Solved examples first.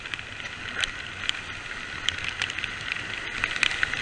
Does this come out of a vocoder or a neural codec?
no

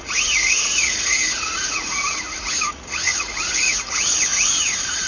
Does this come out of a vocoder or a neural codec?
yes